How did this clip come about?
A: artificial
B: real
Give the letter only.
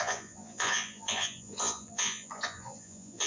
A